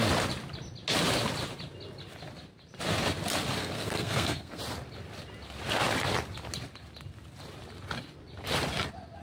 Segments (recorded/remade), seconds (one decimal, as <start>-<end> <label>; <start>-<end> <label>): 0.0-3.6 recorded; 3.6-4.6 remade; 4.6-9.2 recorded

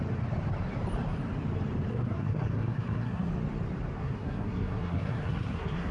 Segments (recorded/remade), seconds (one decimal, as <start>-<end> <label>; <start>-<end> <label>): 0.0-1.9 recorded; 1.9-3.3 remade; 3.3-4.0 recorded; 4.0-5.9 remade

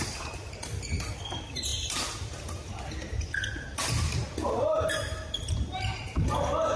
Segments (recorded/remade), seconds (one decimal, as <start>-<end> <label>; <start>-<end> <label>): 0.0-6.8 recorded

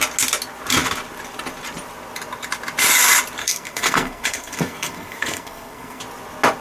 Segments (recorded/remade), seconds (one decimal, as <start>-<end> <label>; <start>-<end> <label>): 0.0-3.4 recorded; 3.4-6.0 remade; 6.0-6.6 recorded

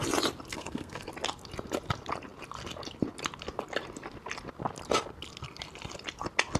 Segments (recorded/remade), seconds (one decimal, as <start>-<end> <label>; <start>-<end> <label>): 0.0-0.5 recorded; 0.5-1.1 remade; 1.1-6.6 recorded

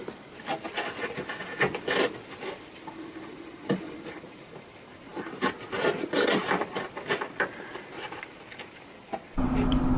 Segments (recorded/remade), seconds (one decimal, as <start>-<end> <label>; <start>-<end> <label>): 0.0-10.0 recorded

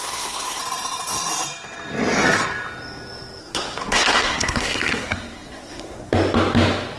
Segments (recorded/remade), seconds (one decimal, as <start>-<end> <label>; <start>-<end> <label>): 0.0-0.6 remade; 0.6-3.4 recorded; 3.4-6.1 remade; 6.1-7.0 recorded

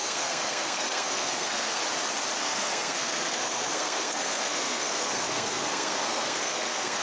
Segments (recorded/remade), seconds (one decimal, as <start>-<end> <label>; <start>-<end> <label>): 0.0-1.8 remade; 1.8-2.4 recorded; 2.4-7.0 remade